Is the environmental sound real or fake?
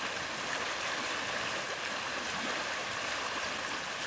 real